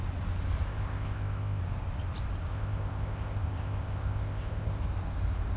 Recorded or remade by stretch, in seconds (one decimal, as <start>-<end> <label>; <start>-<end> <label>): 0.0-0.7 recorded; 0.7-1.6 remade; 1.6-2.5 recorded; 2.5-4.8 remade; 4.8-5.6 recorded